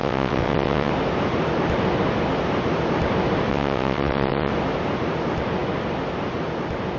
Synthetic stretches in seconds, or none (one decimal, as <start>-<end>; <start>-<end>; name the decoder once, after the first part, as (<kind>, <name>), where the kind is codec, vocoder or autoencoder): 0.0-0.9 (vocoder, WaveNeXt); 3.5-4.5